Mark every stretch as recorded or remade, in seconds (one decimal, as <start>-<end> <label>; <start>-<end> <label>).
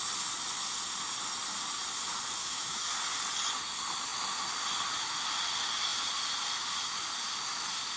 0.0-2.4 recorded; 2.4-2.9 remade; 2.9-8.0 recorded